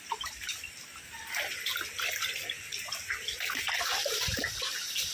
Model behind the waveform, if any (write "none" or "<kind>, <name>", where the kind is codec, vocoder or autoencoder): none